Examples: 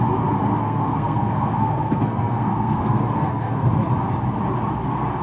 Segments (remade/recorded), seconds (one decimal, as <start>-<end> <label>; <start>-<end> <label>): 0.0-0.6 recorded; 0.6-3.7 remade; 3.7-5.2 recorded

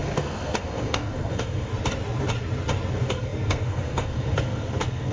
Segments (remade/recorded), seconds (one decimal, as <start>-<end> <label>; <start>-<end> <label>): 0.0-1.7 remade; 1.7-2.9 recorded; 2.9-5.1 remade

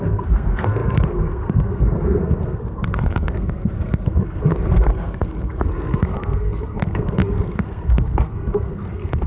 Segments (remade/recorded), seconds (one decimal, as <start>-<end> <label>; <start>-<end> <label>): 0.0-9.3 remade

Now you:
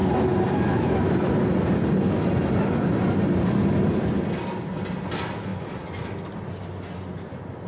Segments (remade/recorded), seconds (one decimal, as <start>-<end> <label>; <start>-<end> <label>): 0.0-7.7 recorded

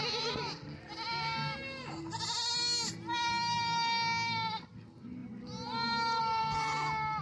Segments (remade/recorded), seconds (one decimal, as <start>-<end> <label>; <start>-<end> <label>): 0.0-7.2 recorded

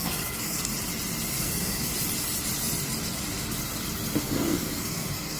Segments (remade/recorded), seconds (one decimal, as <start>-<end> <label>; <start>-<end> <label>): 0.0-0.7 remade; 0.7-1.3 recorded; 1.3-1.9 remade; 1.9-4.2 recorded; 4.2-5.4 remade

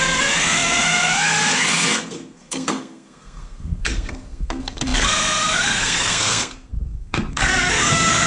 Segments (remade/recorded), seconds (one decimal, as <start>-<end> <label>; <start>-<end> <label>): 0.0-8.3 remade